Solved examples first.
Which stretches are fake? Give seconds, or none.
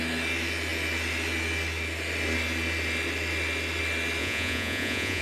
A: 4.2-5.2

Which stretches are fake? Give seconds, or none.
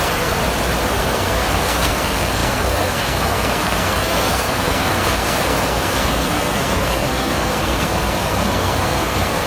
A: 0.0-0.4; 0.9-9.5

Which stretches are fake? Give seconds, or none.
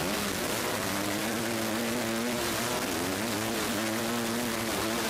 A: none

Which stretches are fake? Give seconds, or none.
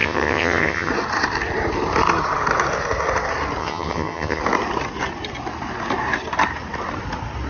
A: 0.0-0.9; 3.6-4.4